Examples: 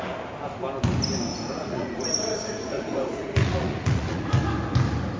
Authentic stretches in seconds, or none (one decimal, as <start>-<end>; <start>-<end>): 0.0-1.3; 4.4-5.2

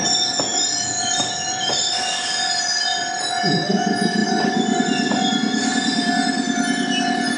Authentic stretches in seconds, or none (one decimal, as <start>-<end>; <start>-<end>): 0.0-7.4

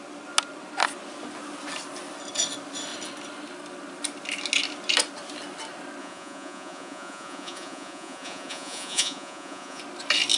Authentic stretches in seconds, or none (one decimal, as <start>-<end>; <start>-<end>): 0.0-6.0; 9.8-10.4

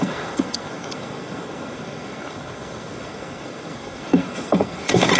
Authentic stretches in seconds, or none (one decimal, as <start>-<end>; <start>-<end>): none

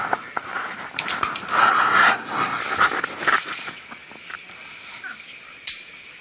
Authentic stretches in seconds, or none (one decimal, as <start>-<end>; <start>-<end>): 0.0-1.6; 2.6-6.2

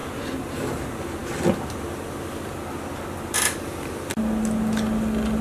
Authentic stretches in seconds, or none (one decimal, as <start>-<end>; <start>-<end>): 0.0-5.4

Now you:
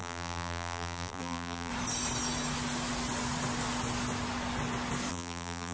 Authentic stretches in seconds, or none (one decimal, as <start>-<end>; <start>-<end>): 1.7-5.1